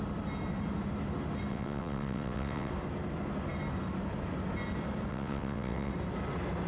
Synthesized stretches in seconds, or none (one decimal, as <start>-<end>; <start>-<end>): 1.5-2.7; 5.1-5.9